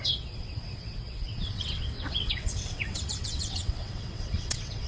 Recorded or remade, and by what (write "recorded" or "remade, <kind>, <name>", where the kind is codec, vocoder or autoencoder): remade, vocoder, WaveNeXt